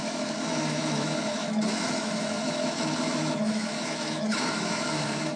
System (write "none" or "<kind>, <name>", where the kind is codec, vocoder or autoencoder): autoencoder, DAC-VAE